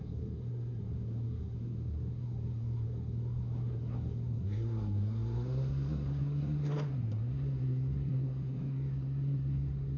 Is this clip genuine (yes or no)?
no